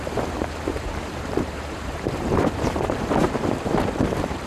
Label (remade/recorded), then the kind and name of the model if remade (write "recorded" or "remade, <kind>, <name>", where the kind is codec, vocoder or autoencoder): remade, vocoder, BigVGAN v2